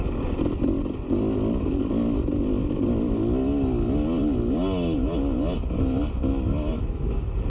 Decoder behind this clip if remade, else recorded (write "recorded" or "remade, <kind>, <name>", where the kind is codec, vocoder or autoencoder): recorded